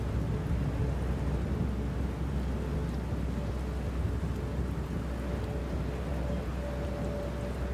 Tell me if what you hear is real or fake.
real